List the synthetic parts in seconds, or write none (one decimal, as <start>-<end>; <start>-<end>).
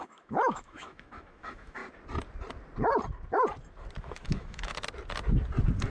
0.0-1.8; 4.0-4.7